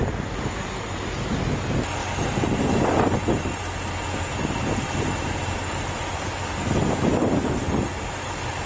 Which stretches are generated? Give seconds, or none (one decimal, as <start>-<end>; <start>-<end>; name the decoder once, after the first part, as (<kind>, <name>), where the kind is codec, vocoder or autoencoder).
2.0-2.9 (vocoder, BigVGAN v2); 4.3-6.0